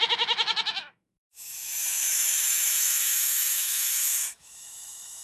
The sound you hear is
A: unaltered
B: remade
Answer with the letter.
B